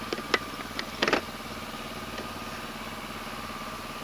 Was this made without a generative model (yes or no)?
yes